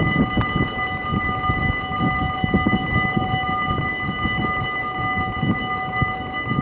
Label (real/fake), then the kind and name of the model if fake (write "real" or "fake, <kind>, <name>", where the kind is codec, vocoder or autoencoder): real